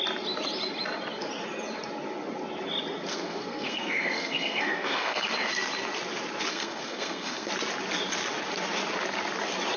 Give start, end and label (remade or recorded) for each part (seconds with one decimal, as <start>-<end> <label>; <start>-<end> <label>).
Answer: 0.0-3.1 recorded; 3.1-5.2 remade; 5.2-6.5 recorded; 6.5-7.5 remade; 7.5-9.8 recorded